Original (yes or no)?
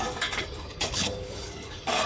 no